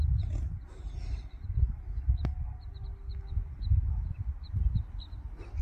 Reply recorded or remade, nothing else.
recorded